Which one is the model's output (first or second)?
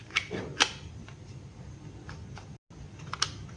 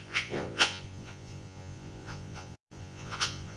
second